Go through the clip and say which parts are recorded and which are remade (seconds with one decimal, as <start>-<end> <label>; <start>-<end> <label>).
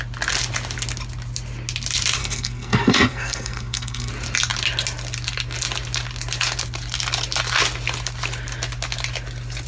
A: 0.0-2.2 recorded; 2.2-4.1 remade; 4.1-9.7 recorded